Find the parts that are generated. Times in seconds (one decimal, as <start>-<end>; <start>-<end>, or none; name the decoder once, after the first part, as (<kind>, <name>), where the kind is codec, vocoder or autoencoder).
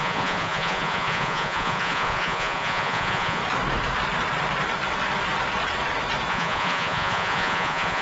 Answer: 0.0-3.4 (vocoder, Vocos); 6.3-8.0